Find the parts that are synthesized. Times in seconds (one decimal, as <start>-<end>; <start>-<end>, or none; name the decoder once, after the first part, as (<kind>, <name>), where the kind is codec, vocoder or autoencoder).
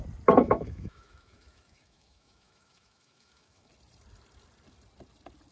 0.4-3.7 (autoencoder, DAC-VAE)